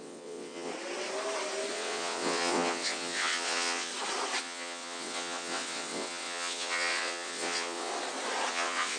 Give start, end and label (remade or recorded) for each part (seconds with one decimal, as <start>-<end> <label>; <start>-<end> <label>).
0.0-0.7 remade; 0.7-1.7 recorded; 1.7-3.9 remade; 3.9-4.4 recorded; 4.4-7.9 remade; 7.9-8.5 recorded; 8.5-9.0 remade